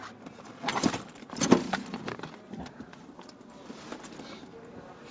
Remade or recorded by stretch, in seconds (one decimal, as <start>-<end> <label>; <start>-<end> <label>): 0.0-0.7 recorded; 0.7-3.7 remade; 3.7-5.1 recorded